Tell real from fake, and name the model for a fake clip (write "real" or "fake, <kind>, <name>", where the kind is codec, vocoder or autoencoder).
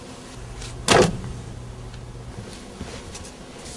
real